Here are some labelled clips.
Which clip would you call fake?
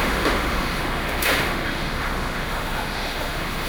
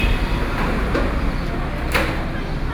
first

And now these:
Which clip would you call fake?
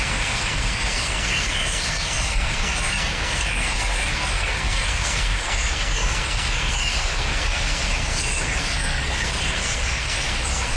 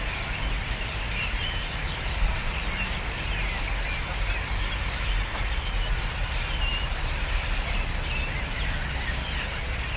first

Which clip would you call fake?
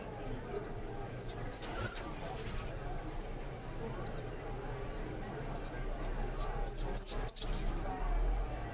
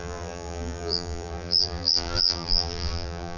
second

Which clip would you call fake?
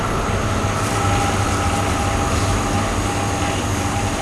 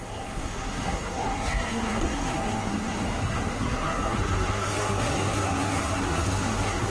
second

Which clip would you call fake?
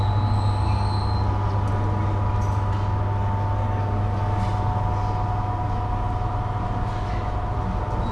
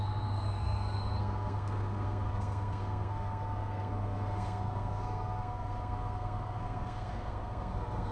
second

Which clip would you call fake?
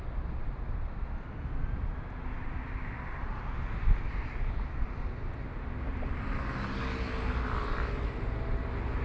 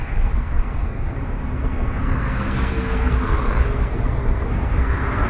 second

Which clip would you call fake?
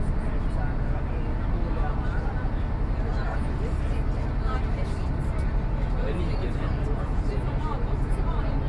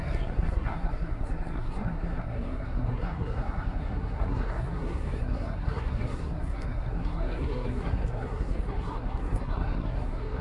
second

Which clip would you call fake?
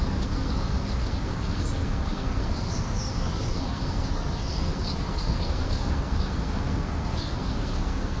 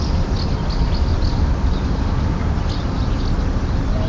first